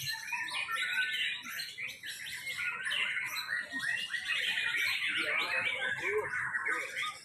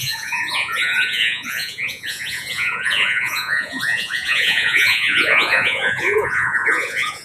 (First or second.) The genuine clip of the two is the first